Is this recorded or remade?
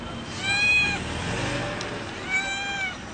recorded